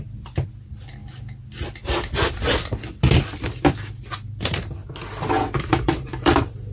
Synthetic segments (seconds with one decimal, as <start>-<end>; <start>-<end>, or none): 0.0-1.0; 3.9-4.8; 5.6-6.7